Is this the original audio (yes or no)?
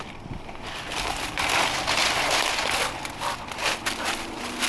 yes